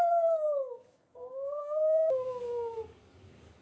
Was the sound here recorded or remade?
remade